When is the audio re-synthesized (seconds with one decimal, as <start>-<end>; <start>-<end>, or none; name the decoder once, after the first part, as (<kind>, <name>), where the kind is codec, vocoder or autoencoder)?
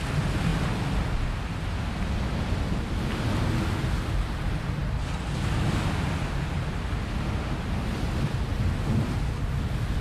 none